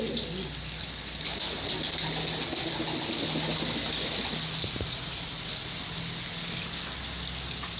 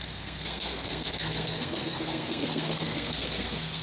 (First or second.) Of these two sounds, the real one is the first